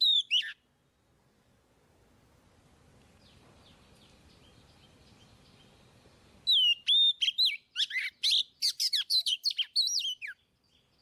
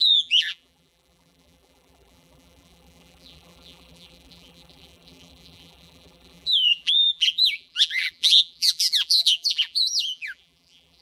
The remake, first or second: second